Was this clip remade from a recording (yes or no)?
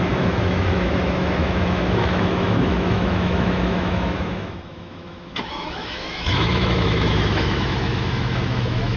yes